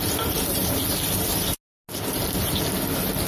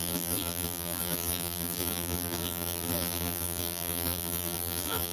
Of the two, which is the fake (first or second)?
second